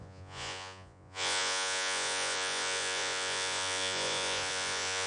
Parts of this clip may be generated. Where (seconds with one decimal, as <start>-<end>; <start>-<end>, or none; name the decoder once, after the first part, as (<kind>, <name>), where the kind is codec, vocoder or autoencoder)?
0.0-5.1 (vocoder, Vocos)